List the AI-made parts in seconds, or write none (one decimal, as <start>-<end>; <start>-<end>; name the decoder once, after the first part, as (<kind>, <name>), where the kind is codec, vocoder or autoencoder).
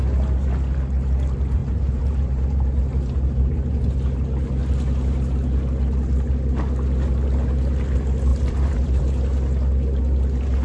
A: 1.6-4.0 (vocoder, BigVGAN v2); 8.3-9.0